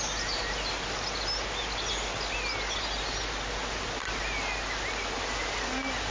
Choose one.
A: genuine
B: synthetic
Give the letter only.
A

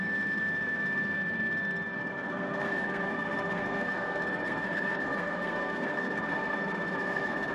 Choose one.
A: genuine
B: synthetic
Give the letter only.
B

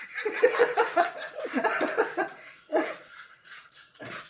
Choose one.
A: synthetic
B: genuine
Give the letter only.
A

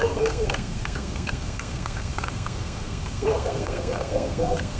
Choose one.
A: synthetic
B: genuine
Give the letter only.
A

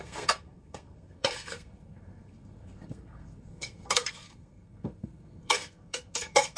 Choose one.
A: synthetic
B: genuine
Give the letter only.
A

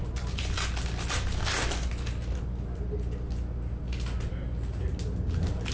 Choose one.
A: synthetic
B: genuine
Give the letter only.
B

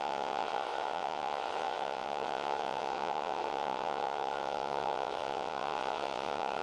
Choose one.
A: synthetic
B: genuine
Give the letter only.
A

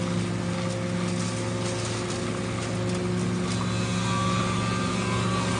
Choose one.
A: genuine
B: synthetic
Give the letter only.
A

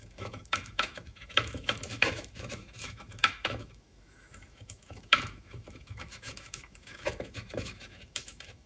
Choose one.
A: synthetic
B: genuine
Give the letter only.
A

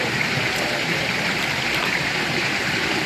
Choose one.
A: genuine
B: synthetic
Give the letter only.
B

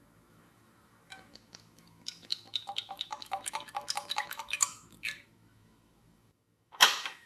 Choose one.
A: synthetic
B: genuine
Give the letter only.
A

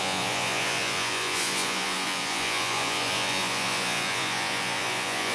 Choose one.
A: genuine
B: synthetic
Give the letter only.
B